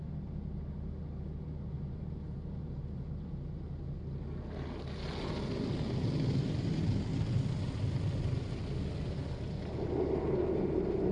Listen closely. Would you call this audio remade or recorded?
recorded